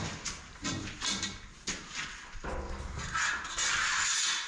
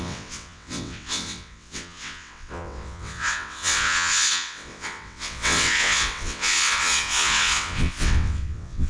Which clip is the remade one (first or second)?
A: second